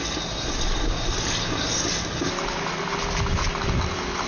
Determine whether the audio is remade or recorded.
recorded